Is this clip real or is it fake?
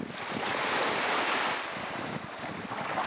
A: real